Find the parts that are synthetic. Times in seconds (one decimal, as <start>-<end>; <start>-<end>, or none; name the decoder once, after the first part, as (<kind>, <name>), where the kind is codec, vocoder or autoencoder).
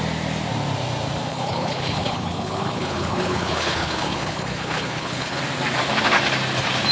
1.3-5.4 (codec, HILCodec)